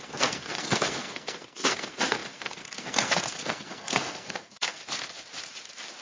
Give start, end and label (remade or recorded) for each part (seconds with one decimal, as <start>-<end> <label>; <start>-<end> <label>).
0.0-4.8 remade; 4.8-6.0 recorded